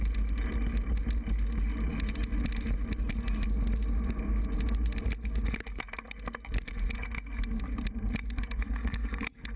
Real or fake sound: real